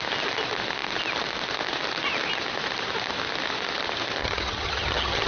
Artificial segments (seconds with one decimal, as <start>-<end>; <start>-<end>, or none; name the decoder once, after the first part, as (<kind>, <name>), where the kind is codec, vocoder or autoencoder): 4.2-5.3 (vocoder, HiFi-GAN)